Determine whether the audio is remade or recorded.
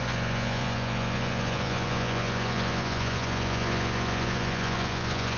remade